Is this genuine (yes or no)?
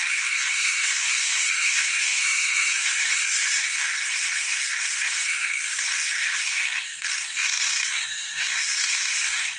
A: no